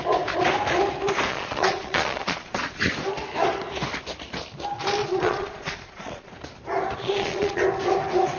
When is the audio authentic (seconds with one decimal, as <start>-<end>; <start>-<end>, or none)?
0.0-1.3; 2.8-5.0; 6.3-7.0; 7.6-8.4

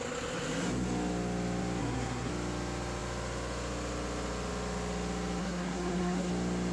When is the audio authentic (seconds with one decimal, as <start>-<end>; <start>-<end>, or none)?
0.0-1.8; 2.3-5.4; 6.3-6.7

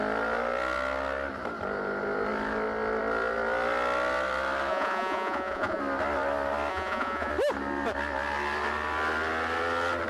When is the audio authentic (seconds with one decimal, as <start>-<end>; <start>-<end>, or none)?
0.0-4.7; 5.8-6.7; 7.3-10.1

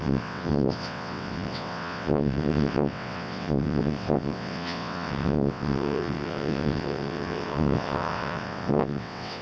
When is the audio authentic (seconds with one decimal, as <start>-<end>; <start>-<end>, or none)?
none